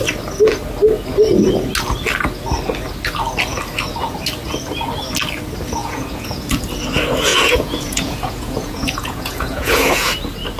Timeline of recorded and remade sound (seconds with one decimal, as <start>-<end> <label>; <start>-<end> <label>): 0.0-5.8 recorded; 5.8-6.4 remade; 6.4-7.3 recorded; 7.3-10.1 remade; 10.1-10.6 recorded